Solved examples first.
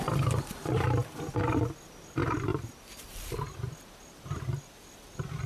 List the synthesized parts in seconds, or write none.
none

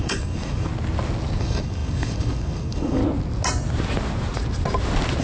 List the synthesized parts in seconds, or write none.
0.0-0.7 (codec, DAC); 1.4-3.0

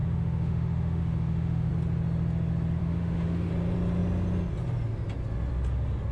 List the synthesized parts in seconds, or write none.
0.0-1.7 (autoencoder, DAC-VAE); 2.8-3.5

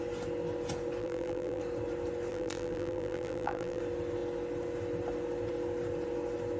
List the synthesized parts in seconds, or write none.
1.0-1.6 (vocoder, BigVGAN v2); 2.3-3.8